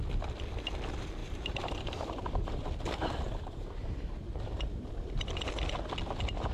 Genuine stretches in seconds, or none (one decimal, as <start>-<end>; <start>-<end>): 0.0-1.2; 4.9-6.5